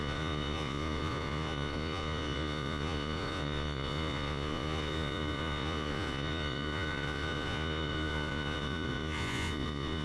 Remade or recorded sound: remade